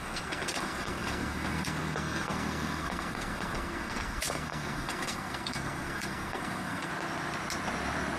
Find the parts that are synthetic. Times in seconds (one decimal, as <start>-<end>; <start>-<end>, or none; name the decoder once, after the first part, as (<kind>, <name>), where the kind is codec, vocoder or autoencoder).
0.0-6.9 (codec, SNAC)